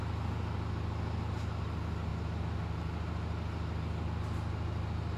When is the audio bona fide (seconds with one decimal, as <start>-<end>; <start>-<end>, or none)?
0.0-5.2